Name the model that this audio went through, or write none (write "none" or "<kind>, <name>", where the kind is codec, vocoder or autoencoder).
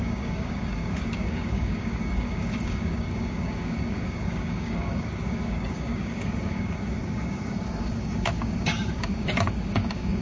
codec, DAC